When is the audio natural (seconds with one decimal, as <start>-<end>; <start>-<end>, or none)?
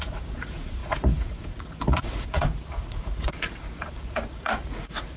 none